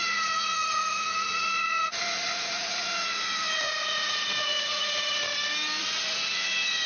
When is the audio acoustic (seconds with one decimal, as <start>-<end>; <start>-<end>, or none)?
5.2-5.8